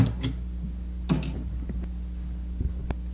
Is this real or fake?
real